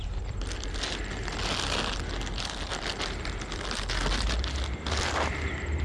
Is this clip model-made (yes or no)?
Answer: no